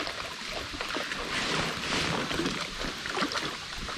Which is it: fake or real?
real